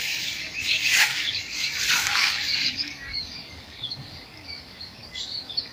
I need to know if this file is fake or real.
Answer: fake